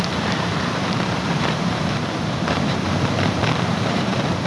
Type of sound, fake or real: fake